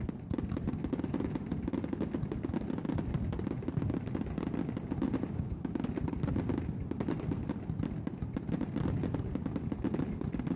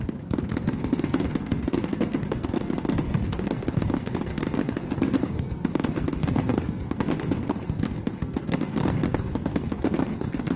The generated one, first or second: second